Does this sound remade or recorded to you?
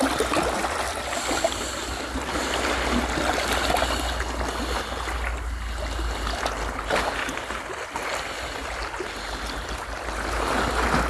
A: recorded